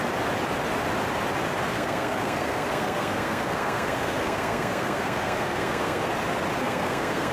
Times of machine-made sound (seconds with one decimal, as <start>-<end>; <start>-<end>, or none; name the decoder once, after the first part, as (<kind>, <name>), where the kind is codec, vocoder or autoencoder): 1.7-6.1 (codec, SNAC); 6.6-7.3